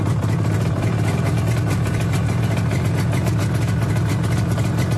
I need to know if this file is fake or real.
real